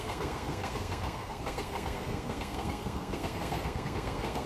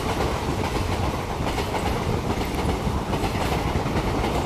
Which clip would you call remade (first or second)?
first